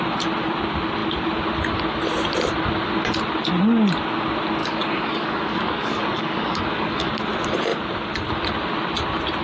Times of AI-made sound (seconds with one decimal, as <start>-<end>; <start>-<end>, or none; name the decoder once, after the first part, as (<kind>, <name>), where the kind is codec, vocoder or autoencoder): 4.6-7.1 (codec, DAC)